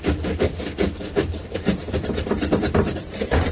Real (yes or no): no